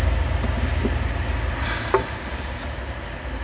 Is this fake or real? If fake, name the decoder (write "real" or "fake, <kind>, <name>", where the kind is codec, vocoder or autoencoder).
real